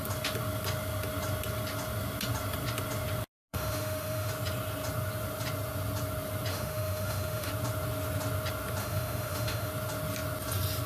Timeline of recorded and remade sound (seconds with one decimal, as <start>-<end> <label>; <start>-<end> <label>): 0.0-3.5 recorded; 3.5-4.3 remade; 4.3-6.5 recorded; 6.5-7.5 remade; 7.5-8.8 recorded; 8.8-9.7 remade; 9.7-10.9 recorded